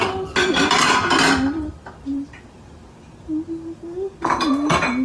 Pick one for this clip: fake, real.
real